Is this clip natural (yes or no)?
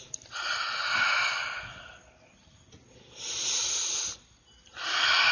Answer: yes